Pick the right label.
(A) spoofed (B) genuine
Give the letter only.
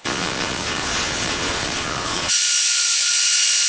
A